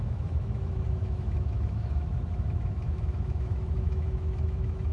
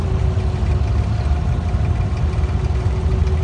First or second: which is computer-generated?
first